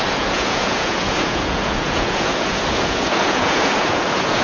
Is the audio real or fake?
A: fake